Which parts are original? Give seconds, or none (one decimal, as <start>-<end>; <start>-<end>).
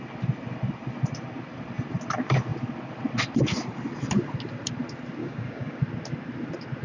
0.0-5.2; 5.8-6.8